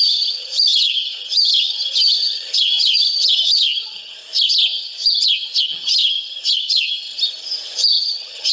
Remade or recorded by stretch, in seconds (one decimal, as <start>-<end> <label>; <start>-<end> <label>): 0.0-4.2 remade; 4.2-5.6 recorded; 5.6-7.1 remade; 7.1-8.0 recorded; 8.0-8.5 remade